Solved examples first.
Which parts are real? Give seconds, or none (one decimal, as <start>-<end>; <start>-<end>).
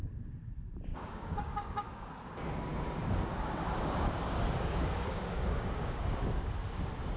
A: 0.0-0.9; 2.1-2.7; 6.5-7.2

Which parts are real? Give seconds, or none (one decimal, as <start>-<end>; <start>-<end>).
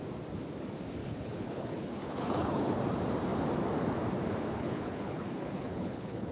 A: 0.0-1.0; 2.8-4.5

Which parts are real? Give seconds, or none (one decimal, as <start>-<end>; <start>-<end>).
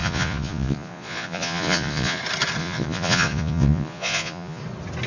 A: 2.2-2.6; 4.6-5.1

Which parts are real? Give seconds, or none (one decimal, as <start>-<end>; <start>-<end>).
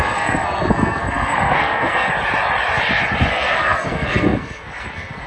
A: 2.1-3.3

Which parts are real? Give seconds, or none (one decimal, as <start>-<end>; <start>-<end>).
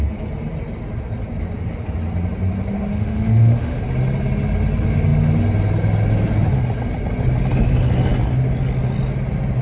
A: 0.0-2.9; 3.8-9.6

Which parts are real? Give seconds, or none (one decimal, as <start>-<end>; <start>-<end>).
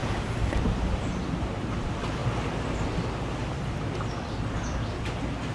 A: 2.2-4.9